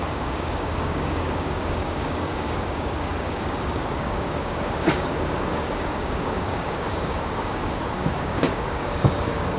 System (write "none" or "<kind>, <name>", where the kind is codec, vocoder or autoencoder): codec, DAC